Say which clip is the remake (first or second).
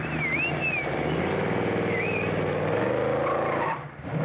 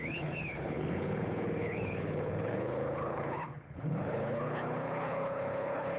second